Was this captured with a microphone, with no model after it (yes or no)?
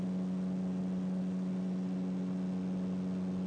yes